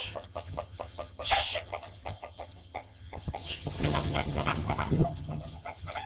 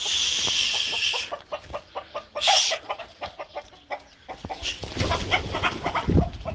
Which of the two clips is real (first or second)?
second